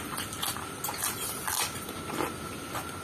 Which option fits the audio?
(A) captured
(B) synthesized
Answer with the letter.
A